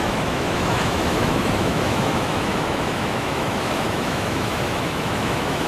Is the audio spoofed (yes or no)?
yes